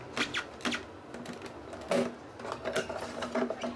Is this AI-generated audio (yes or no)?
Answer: no